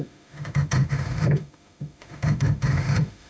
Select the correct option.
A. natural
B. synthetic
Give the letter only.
B